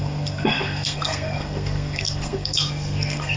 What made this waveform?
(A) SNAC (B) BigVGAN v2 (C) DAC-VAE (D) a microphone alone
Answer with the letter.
A